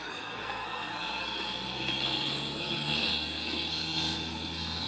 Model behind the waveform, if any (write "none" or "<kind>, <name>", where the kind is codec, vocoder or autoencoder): codec, SNAC